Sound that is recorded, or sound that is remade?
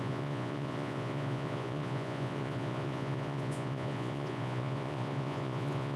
remade